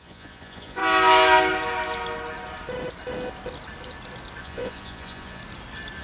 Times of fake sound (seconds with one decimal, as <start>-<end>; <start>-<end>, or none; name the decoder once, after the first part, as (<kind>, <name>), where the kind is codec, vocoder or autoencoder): 0.0-0.8 (vocoder, Vocos); 4.4-5.4